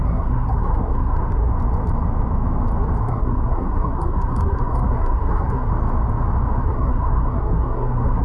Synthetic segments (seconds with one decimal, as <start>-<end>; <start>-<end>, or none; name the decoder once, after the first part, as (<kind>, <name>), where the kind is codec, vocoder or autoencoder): 0.0-1.5 (codec, SNAC); 3.0-5.7; 6.6-8.2